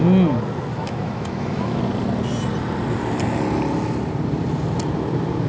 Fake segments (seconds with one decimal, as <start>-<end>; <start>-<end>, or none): 0.7-1.8